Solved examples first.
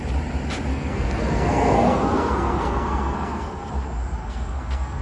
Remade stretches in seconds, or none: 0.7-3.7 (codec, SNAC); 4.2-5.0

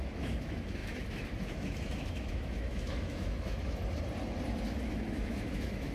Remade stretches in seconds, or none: 0.0-3.8 (autoencoder, DAC-VAE); 4.9-5.9

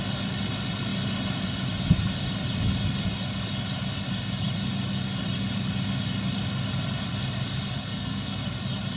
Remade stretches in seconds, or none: 7.8-8.4 (codec, SNAC)

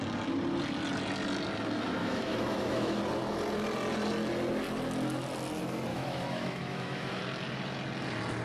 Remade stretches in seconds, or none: 2.0-3.0 (autoencoder, DAC-VAE); 5.9-7.2